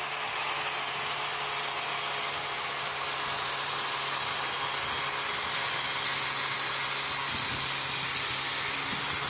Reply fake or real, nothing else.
real